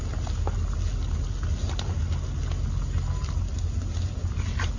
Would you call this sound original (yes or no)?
yes